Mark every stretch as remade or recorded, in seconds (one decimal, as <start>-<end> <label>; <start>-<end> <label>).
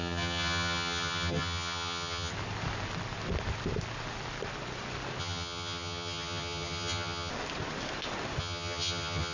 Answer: 0.0-2.3 remade; 2.3-5.2 recorded; 5.2-7.3 remade; 7.3-8.4 recorded; 8.4-9.3 remade